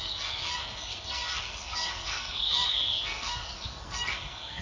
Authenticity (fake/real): fake